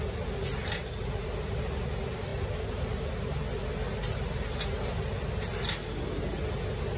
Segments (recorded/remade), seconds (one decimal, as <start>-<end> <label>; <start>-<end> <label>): 0.0-7.0 recorded